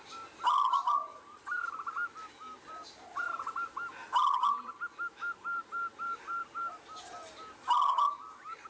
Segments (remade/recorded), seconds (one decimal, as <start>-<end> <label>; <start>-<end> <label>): 0.0-8.7 recorded

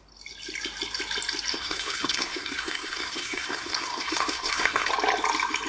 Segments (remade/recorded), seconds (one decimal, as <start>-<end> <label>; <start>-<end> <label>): 0.0-1.5 recorded; 1.5-4.9 remade; 4.9-5.7 recorded

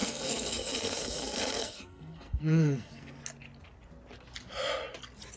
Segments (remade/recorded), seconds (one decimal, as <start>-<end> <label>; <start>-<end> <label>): 0.0-3.2 remade; 3.2-5.4 recorded

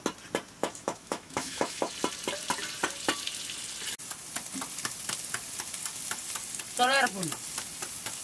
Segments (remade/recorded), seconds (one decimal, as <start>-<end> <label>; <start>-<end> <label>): 0.0-0.6 recorded; 0.6-1.9 remade; 1.9-8.2 recorded

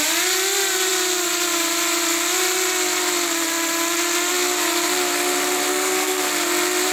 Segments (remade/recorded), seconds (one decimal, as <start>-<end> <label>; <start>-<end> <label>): 0.0-5.7 recorded; 5.7-6.2 remade; 6.2-6.9 recorded

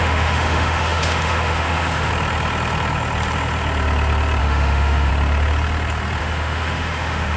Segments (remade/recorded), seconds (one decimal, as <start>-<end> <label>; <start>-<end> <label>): 0.0-2.1 remade; 2.1-4.4 recorded; 4.4-5.1 remade; 5.1-6.2 recorded; 6.2-7.4 remade